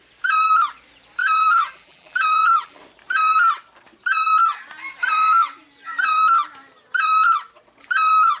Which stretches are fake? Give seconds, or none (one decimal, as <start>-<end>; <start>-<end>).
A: 1.2-2.8